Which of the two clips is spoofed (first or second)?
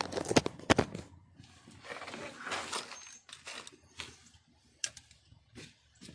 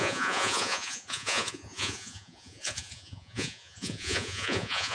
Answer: second